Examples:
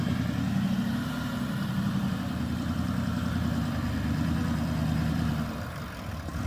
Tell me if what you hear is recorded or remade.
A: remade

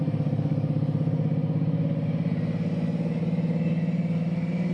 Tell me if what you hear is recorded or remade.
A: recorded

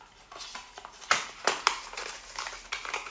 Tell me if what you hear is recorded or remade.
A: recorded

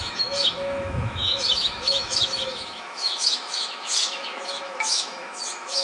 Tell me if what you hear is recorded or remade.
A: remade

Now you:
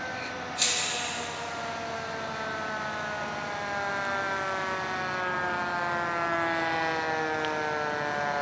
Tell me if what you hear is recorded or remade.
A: recorded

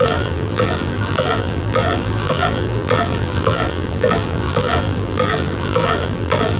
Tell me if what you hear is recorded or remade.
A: remade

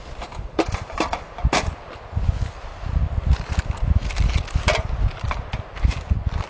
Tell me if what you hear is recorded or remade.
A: recorded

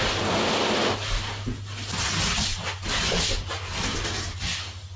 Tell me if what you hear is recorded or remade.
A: recorded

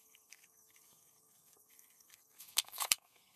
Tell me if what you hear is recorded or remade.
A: remade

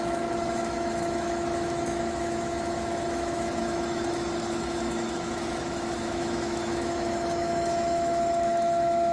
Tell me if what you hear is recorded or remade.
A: remade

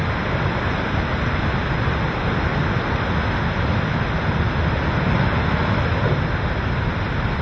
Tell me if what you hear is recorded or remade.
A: recorded